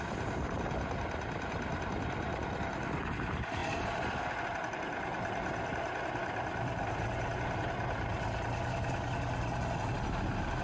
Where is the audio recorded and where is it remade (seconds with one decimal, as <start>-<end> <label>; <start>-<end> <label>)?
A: 0.0-5.1 recorded; 5.1-5.7 remade; 5.7-10.6 recorded